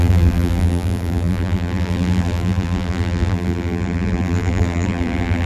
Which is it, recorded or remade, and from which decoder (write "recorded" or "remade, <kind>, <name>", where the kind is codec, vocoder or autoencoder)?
remade, vocoder, BigVGAN v2